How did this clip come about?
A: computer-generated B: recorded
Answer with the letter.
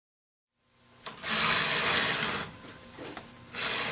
B